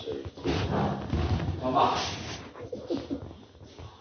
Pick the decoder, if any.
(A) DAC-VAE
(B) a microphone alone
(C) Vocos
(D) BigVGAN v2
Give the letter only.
B